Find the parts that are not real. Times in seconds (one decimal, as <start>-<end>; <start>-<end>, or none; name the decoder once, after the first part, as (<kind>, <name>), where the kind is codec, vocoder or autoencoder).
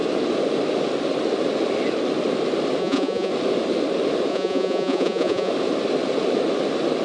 2.8-3.3 (vocoder, Vocos); 4.3-5.5